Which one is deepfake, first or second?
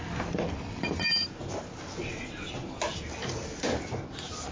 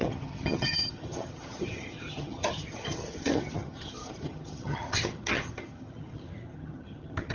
second